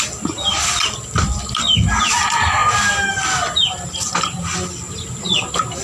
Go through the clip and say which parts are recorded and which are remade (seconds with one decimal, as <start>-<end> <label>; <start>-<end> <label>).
0.0-5.8 recorded